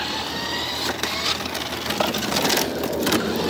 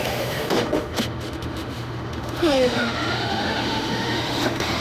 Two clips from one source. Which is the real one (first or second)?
first